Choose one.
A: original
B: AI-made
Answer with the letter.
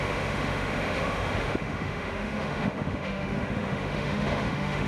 B